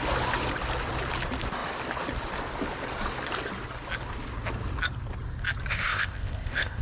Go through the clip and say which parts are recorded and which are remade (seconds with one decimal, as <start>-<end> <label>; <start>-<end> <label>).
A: 0.0-5.7 recorded; 5.7-6.8 remade